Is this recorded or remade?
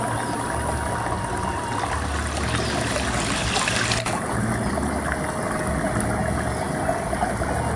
recorded